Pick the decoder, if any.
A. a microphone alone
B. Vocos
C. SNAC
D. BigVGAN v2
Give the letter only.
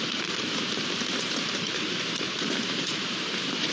D